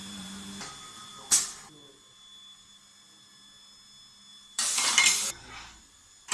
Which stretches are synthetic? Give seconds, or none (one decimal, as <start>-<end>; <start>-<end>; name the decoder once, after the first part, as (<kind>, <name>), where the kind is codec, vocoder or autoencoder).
0.0-0.6 (vocoder, BigVGAN v2); 4.3-5.5